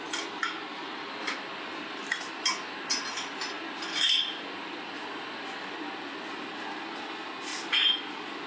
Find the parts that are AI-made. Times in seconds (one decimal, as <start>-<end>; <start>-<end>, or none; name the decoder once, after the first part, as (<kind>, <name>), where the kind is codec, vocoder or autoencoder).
none